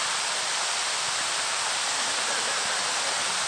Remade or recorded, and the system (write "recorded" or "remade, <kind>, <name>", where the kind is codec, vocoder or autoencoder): remade, vocoder, BigVGAN v2